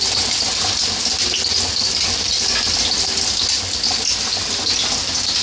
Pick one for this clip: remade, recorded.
recorded